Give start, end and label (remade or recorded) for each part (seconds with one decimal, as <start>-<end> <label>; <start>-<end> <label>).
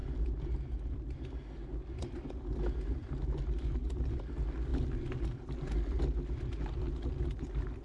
0.0-7.8 recorded